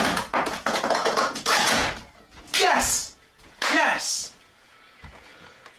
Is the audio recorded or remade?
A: remade